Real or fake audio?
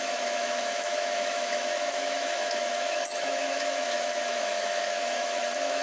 fake